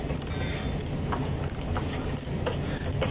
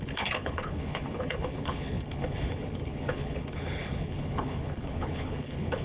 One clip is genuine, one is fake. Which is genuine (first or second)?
first